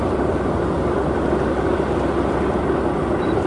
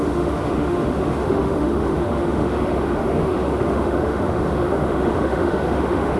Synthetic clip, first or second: second